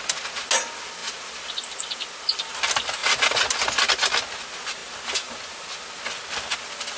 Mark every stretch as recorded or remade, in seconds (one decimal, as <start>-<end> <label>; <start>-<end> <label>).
0.0-7.0 recorded